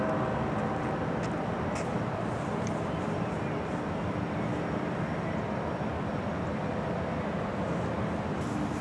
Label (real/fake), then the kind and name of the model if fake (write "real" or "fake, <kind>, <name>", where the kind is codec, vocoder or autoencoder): real